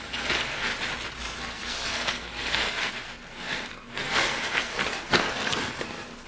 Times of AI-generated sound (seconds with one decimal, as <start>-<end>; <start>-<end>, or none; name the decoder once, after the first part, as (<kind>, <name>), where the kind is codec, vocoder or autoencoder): 0.0-0.7 (codec, SNAC); 1.2-6.3